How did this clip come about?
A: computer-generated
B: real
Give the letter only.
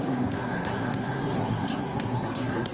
A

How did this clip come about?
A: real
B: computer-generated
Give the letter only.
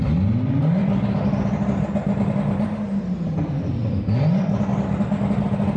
A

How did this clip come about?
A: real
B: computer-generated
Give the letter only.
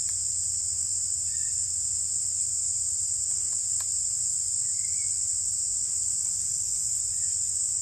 A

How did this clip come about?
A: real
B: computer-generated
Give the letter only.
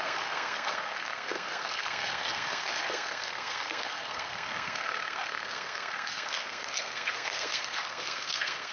B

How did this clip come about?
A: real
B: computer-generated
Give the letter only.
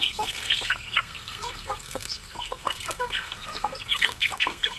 B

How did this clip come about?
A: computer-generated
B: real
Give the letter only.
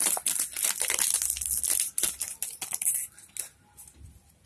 B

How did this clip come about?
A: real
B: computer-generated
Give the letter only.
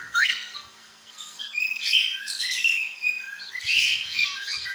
B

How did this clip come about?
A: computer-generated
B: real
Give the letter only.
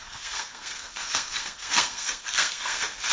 A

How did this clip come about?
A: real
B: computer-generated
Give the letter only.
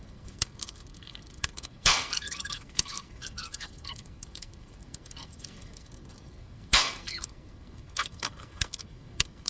B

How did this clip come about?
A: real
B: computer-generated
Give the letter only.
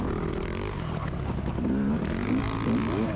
A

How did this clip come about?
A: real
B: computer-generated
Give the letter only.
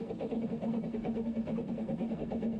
B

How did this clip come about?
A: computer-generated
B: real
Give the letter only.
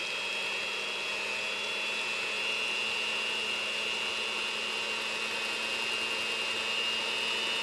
B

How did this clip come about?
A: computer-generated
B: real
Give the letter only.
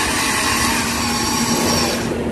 B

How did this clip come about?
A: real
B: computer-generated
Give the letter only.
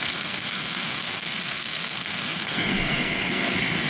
B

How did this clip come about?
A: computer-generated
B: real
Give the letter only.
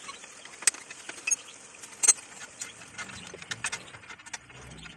B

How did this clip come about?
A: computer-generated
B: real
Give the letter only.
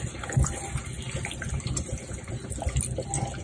B